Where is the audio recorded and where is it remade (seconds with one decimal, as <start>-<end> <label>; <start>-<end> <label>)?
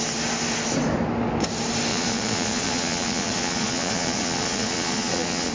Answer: 0.0-1.9 recorded; 1.9-5.5 remade